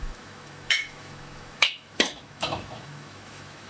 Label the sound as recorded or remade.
remade